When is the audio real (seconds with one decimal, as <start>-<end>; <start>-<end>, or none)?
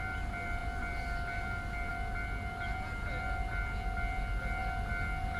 0.0-5.4